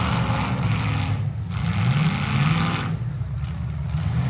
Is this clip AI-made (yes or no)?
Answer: no